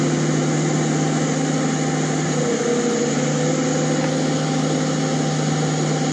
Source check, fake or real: real